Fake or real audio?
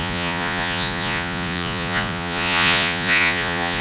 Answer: fake